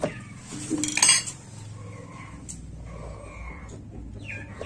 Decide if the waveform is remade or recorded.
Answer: recorded